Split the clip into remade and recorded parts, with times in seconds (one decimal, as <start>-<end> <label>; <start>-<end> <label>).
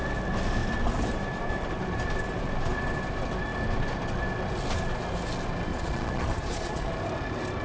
0.0-5.7 recorded; 5.7-6.9 remade; 6.9-7.6 recorded